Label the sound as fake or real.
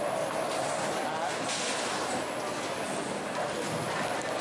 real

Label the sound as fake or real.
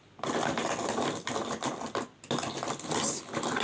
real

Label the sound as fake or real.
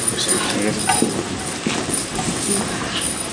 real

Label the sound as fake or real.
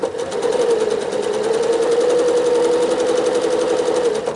real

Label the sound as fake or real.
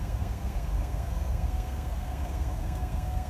fake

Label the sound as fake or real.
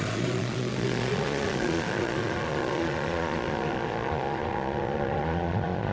fake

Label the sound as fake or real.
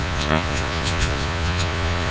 fake